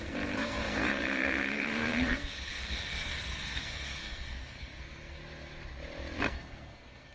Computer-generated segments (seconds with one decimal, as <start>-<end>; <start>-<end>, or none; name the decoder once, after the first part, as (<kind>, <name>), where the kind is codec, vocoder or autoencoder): 0.0-5.2 (codec, SNAC); 6.2-7.1